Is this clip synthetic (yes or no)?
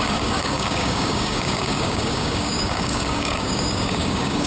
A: yes